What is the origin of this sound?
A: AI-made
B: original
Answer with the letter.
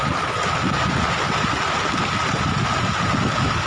B